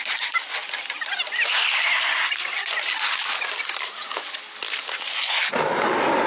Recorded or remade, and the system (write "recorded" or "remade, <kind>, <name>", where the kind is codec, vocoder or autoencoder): recorded